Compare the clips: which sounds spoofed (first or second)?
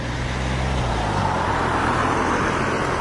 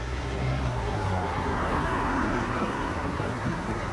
second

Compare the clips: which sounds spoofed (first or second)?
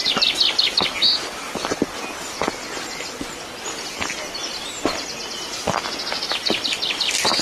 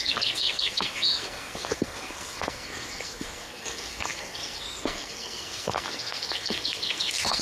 second